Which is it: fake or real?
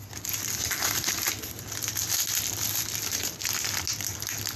real